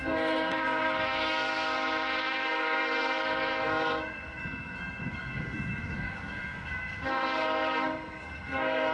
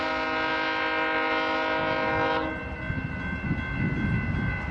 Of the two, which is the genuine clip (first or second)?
second